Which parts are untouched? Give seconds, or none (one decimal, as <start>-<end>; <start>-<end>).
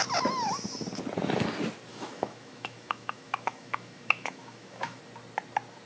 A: 0.0-1.9; 5.0-5.9